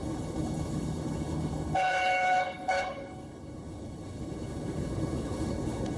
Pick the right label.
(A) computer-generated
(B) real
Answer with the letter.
A